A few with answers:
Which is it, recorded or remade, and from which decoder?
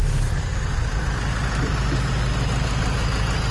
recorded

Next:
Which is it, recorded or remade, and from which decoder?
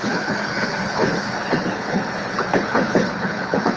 remade, codec, HILCodec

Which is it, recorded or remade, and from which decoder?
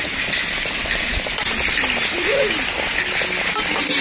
recorded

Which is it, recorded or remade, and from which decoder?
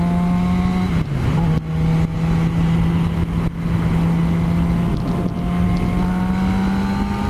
recorded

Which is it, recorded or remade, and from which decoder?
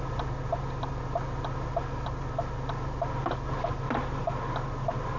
recorded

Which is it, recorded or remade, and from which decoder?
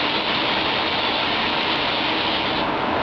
recorded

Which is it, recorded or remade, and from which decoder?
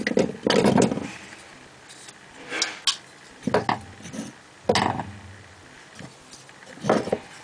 recorded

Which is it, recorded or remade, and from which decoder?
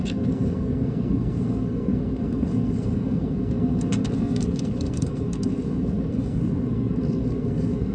remade, codec, SNAC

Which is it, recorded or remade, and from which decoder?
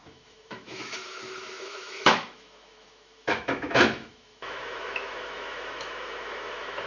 remade, autoencoder, DAC-VAE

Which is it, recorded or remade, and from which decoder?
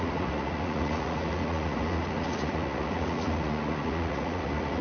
remade, vocoder, Vocos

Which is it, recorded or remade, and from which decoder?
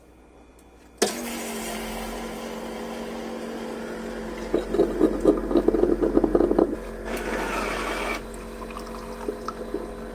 recorded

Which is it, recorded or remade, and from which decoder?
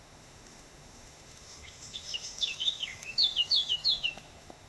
remade, autoencoder, DAC-VAE